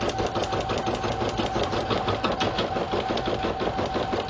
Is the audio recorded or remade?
recorded